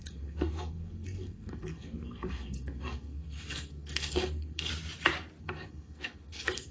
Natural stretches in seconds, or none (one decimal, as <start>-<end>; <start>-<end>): 4.7-5.4